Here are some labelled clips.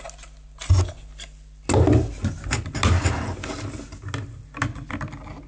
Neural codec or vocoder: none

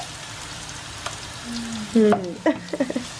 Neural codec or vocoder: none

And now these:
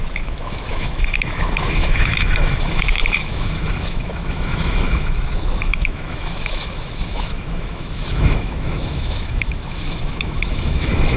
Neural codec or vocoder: autoencoder, DAC-VAE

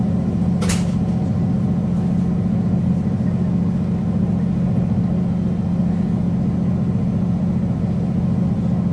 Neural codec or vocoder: none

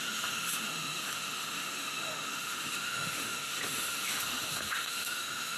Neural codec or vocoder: autoencoder, DAC-VAE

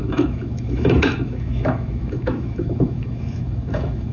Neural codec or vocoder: autoencoder, DAC-VAE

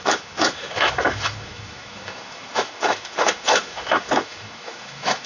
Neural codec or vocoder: autoencoder, DAC-VAE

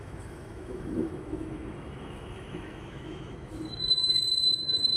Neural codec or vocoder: autoencoder, DAC-VAE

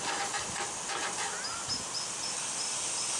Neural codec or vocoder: none